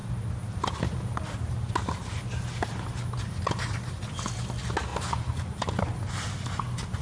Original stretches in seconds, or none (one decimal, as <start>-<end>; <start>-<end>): 0.0-4.9; 5.8-7.0